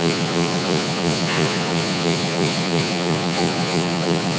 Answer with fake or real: fake